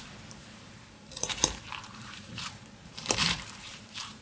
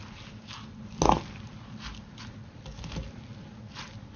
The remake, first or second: first